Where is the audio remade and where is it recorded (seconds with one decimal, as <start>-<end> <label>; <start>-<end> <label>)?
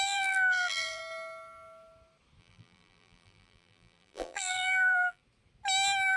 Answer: 0.0-1.0 remade; 1.0-2.4 recorded; 2.4-5.2 remade; 5.2-6.2 recorded